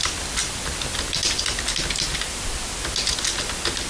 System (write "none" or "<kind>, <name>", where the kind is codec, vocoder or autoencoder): none